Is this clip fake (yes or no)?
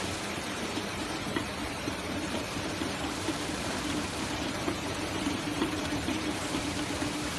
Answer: yes